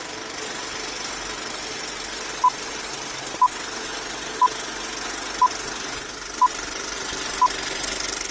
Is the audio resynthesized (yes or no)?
no